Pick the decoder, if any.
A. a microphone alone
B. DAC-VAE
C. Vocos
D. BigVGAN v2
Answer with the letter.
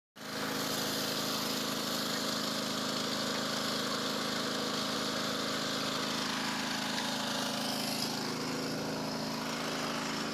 A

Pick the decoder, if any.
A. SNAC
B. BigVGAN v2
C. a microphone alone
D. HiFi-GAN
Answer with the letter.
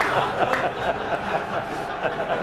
C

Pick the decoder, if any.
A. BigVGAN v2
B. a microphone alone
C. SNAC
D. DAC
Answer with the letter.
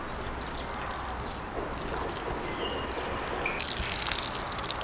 B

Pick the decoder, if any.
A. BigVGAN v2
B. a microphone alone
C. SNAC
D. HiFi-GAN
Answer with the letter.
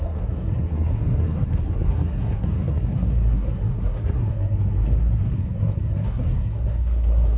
C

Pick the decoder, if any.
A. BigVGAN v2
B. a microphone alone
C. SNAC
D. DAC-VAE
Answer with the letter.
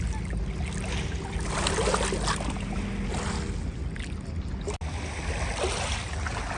B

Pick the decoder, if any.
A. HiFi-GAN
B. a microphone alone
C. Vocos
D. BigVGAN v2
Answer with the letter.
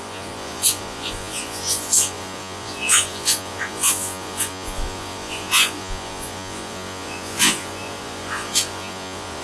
C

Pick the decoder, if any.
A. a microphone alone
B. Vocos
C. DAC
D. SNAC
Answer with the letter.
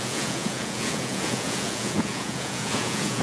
B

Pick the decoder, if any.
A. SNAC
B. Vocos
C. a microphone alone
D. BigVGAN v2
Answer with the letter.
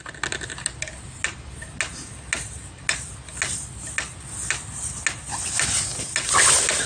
C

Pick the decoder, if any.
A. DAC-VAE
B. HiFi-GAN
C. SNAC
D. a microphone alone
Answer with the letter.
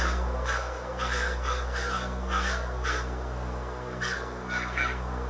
C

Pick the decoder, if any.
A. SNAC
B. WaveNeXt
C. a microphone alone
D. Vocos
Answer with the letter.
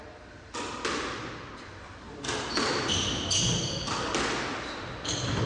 C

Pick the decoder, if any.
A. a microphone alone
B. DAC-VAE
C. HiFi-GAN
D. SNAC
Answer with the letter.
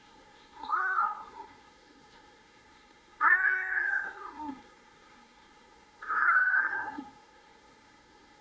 D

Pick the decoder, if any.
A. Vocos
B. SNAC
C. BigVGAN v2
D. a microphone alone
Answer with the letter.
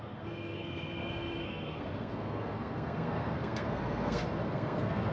B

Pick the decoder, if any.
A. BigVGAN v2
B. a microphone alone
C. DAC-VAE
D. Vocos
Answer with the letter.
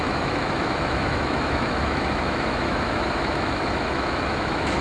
C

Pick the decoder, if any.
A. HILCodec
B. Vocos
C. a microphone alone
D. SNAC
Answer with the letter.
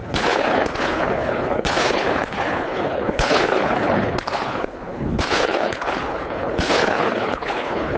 A